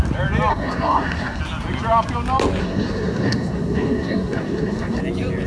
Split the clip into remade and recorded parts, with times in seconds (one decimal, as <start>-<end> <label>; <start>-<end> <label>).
0.0-0.5 recorded; 0.5-1.4 remade; 1.4-2.6 recorded; 2.6-5.0 remade; 5.0-5.5 recorded